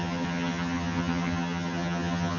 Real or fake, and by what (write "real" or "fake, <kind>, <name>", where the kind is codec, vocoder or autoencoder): fake, vocoder, HiFi-GAN